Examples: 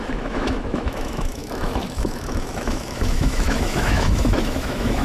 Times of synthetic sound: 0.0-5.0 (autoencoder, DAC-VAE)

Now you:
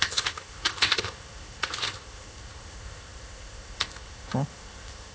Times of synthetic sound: 0.0-5.1 (codec, ZipCodec)

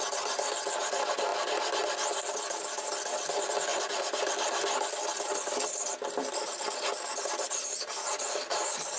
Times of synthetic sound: 3.7-4.3 (vocoder, BigVGAN v2); 6.2-8.2